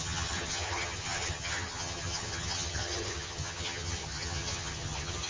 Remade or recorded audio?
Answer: remade